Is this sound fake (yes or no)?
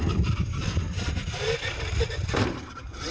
yes